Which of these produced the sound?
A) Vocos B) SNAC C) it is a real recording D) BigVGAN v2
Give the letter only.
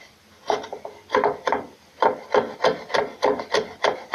C